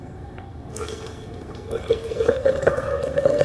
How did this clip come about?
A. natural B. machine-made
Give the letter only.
B